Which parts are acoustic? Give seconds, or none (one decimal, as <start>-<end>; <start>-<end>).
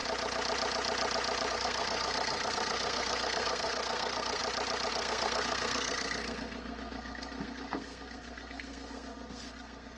0.0-1.5; 4.4-4.9